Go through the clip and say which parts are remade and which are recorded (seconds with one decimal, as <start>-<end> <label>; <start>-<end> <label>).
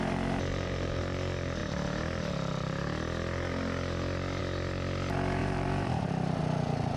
0.0-0.5 recorded; 0.5-1.0 remade; 1.0-5.4 recorded; 5.4-6.4 remade; 6.4-7.0 recorded